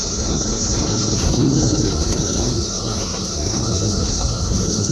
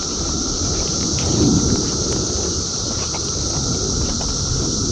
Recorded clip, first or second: second